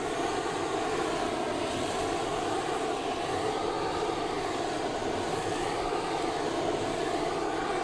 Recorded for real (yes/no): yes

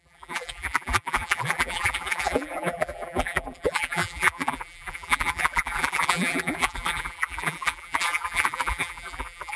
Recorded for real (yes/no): no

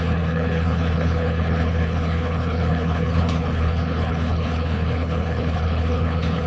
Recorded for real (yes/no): no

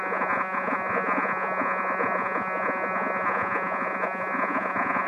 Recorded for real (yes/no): no